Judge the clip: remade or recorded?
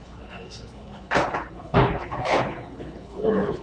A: remade